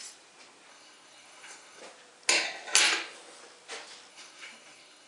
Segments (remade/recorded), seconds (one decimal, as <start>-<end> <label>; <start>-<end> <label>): 0.0-0.7 recorded; 0.7-1.8 remade; 1.8-4.1 recorded; 4.1-5.1 remade